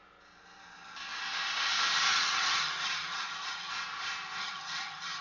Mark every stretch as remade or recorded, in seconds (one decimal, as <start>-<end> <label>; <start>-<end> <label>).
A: 0.0-2.1 recorded; 2.1-3.7 remade; 3.7-4.4 recorded; 4.4-5.2 remade